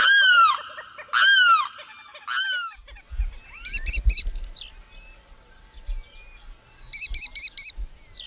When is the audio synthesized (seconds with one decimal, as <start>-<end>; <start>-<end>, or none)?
0.0-0.9